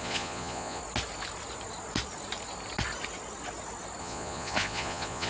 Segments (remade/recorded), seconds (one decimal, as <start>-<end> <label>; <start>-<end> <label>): 0.0-0.8 remade; 0.8-4.0 recorded; 4.0-5.3 remade